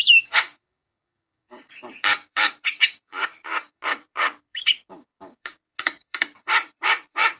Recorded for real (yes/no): no